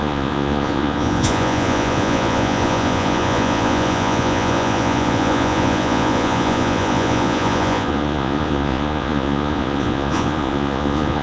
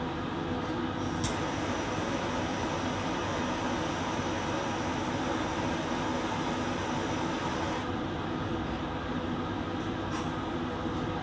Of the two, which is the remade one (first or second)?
first